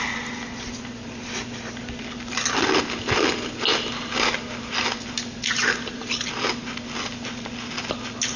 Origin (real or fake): real